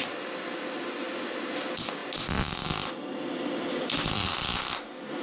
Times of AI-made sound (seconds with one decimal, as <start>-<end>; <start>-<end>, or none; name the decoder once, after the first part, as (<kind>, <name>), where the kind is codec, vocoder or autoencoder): none

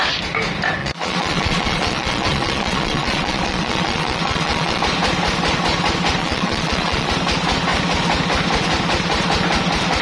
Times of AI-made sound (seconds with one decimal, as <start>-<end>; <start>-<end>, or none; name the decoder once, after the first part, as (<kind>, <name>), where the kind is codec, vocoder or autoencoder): 0.8-4.8 (vocoder, Vocos); 6.2-7.1

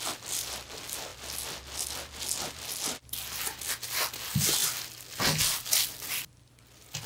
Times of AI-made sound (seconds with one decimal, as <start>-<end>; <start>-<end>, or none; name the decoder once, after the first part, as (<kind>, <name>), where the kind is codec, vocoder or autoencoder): none

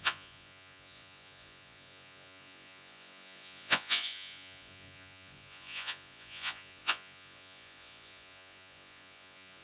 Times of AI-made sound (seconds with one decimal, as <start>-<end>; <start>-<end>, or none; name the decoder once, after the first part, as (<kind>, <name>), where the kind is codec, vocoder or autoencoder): 0.0-9.6 (vocoder, Vocos)

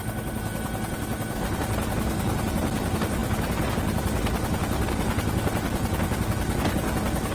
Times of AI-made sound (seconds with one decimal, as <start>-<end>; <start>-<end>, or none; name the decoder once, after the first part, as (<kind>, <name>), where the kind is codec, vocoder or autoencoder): 3.2-3.7 (vocoder, BigVGAN v2)

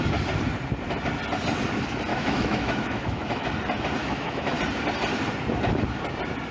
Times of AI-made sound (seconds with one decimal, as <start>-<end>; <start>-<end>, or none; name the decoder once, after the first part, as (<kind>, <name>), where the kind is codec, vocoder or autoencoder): 2.1-3.5 (autoencoder, DAC-VAE); 4.0-4.5